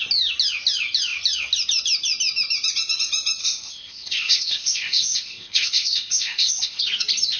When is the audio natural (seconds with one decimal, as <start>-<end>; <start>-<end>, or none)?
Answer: 0.0-3.4; 6.8-7.4